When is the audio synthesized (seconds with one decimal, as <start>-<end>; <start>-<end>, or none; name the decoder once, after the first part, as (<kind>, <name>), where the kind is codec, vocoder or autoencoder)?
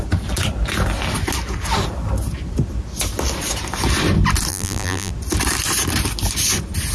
4.5-5.1 (vocoder, BigVGAN v2)